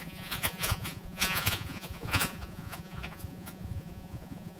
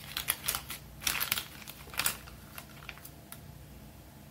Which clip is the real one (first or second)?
second